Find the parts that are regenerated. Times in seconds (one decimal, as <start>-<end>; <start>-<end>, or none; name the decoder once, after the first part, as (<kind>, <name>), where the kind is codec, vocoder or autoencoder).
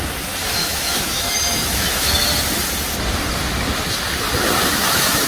0.6-2.3 (autoencoder, DAC-VAE); 4.6-5.3